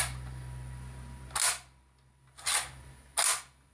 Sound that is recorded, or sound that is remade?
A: recorded